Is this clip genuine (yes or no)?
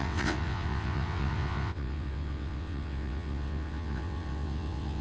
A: no